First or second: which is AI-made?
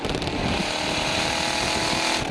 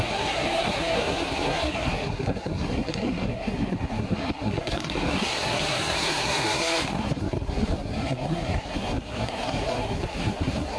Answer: second